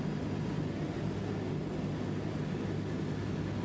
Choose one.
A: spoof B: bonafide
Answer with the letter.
B